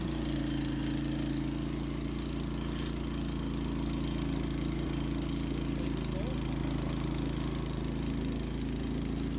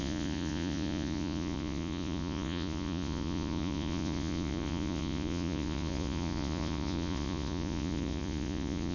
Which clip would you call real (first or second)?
first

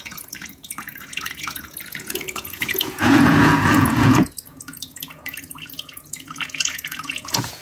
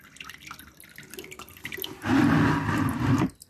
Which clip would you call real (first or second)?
second